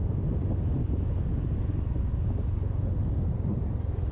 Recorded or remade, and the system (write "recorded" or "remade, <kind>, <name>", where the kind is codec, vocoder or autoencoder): recorded